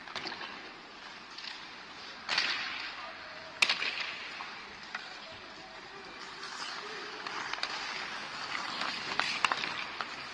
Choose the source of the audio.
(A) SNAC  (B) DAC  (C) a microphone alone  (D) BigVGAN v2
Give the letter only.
C